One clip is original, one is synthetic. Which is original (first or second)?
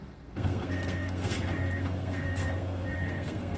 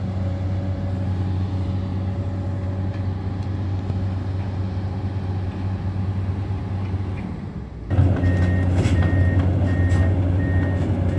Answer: second